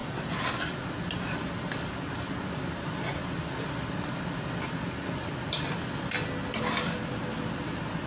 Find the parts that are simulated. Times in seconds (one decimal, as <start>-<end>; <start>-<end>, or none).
none